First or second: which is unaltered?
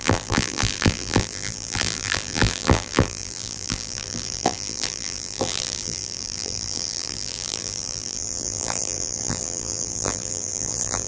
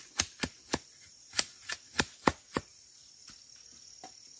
second